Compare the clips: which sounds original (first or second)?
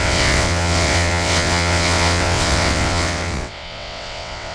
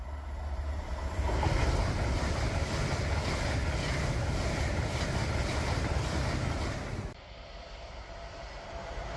second